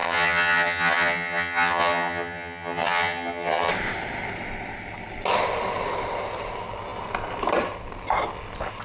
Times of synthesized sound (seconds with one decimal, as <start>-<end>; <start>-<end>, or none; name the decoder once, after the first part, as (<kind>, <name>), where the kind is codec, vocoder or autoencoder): 0.0-3.7 (vocoder, HiFi-GAN)